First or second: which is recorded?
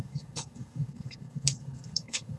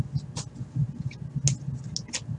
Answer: second